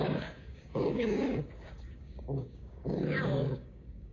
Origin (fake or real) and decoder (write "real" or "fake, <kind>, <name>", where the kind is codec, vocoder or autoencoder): fake, codec, DAC